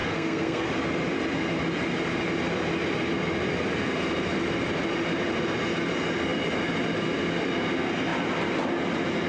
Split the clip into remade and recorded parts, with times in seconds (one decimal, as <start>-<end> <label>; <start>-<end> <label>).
0.0-0.7 remade; 0.7-9.3 recorded